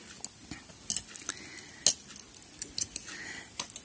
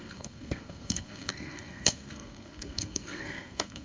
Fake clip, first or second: second